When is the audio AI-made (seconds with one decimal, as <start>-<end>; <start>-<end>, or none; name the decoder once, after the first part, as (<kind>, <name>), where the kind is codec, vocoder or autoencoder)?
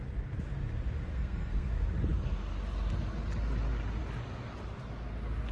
1.1-1.7 (codec, SNAC)